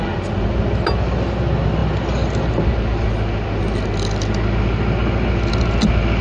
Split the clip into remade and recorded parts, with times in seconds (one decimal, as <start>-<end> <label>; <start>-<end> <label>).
0.0-6.2 recorded